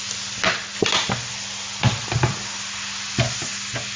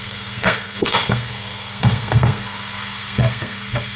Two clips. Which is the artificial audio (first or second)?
second